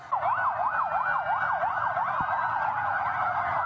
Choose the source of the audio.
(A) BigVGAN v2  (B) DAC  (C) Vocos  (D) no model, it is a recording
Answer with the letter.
D